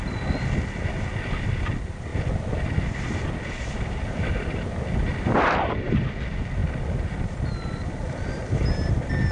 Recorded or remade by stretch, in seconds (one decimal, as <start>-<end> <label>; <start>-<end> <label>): 0.0-2.1 recorded; 2.1-4.3 remade; 4.3-5.1 recorded; 5.1-5.9 remade; 5.9-6.6 recorded; 6.6-8.4 remade; 8.4-9.3 recorded